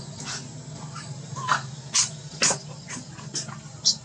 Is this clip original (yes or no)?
yes